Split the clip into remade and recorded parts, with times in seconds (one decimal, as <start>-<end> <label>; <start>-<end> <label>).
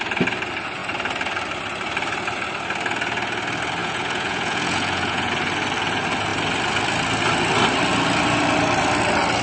0.0-3.8 recorded; 3.8-5.3 remade; 5.3-9.4 recorded